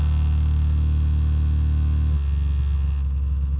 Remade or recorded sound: recorded